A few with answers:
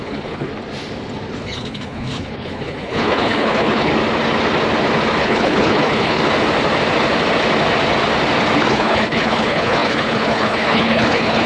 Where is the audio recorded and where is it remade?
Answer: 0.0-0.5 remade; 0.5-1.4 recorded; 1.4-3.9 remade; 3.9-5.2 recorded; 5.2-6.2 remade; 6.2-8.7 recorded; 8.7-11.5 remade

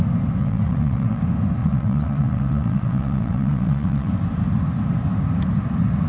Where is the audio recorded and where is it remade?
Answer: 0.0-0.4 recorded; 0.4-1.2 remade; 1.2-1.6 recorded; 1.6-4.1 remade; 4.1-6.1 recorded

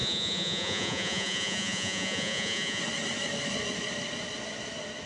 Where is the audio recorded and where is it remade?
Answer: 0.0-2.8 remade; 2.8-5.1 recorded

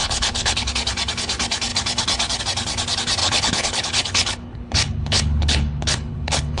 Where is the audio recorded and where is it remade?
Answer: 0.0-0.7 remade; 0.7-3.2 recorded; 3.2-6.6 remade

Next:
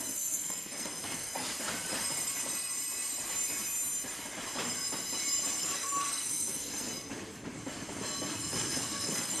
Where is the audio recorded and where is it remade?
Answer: 0.0-1.4 remade; 1.4-5.6 recorded; 5.6-6.9 remade; 6.9-8.3 recorded; 8.3-9.4 remade

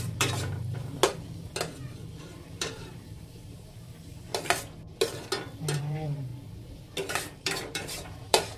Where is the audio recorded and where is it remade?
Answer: 0.0-1.0 remade; 1.0-2.2 recorded; 2.2-4.3 remade; 4.3-5.8 recorded; 5.8-6.3 remade; 6.3-7.2 recorded; 7.2-8.6 remade